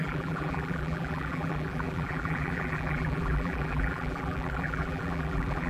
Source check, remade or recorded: remade